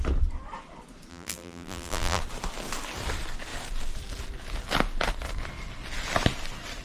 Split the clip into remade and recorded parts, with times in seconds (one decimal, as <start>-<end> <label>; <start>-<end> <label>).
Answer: 0.0-1.1 recorded; 1.1-2.2 remade; 2.2-6.8 recorded